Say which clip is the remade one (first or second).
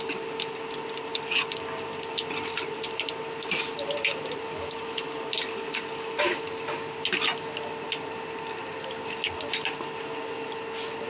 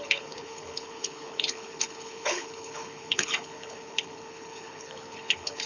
second